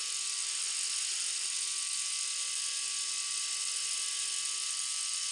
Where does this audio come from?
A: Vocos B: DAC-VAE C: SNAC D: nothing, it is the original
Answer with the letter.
D